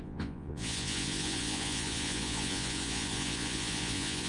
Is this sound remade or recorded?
remade